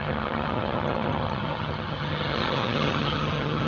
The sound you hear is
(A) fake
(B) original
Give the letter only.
A